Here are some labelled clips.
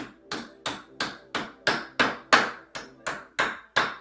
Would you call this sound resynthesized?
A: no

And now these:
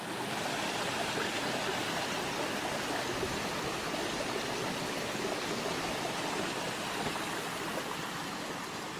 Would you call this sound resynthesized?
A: no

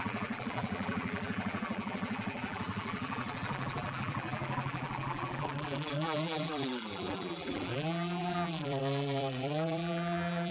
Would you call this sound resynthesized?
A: yes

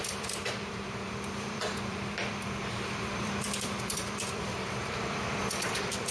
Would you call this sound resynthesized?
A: yes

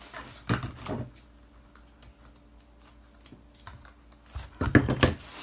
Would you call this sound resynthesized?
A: no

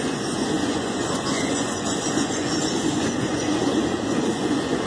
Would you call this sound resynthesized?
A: yes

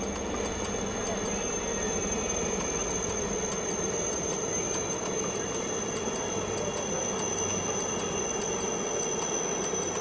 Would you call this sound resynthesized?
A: no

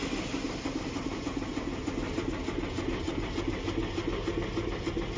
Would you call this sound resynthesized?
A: no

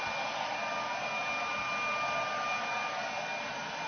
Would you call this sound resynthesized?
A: no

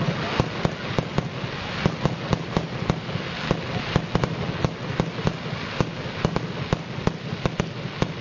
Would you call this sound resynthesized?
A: no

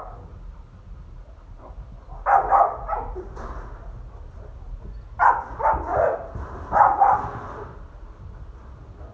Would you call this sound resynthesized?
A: no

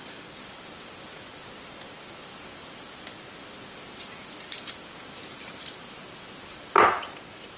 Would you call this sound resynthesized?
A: no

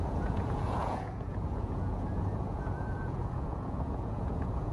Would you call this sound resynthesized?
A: yes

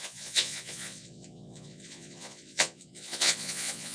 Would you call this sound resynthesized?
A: yes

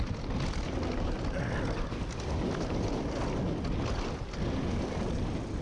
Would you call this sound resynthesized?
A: no